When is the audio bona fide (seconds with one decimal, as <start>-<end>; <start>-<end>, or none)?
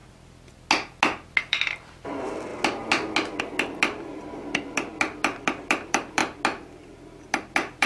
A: 0.0-1.4; 2.5-3.4; 6.2-7.5